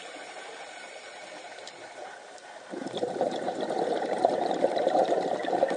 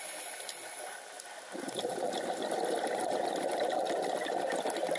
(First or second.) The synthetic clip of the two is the first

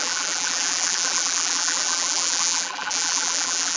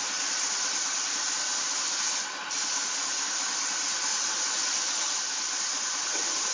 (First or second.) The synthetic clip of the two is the first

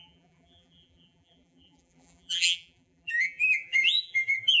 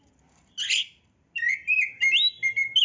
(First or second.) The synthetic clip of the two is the first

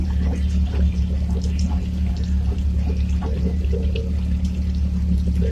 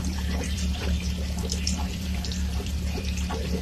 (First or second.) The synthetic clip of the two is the second